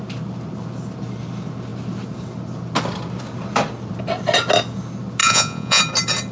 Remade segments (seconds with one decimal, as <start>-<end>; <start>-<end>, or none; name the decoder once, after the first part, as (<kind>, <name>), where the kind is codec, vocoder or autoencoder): 5.2-5.8 (vocoder, Vocos)